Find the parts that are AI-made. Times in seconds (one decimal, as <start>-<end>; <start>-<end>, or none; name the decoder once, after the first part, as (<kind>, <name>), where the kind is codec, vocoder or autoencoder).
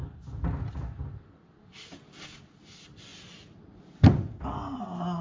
none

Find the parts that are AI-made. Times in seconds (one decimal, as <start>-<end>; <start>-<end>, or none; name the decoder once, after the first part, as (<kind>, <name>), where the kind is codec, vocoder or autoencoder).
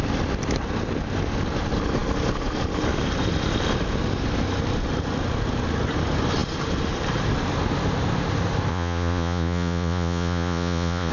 8.7-11.1 (vocoder, Vocos)